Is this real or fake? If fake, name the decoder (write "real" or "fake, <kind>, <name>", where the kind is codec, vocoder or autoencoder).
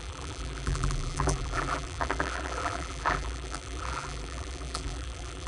fake, vocoder, BigVGAN v2